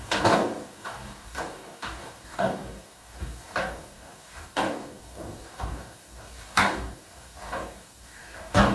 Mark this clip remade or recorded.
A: remade